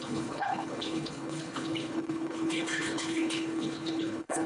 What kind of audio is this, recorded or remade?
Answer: remade